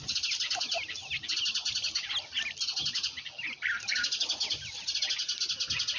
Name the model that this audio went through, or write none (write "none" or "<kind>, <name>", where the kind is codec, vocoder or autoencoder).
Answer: none